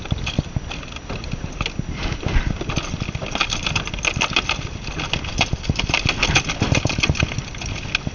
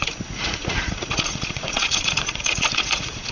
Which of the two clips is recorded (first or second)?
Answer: first